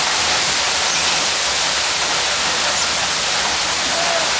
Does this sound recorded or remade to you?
recorded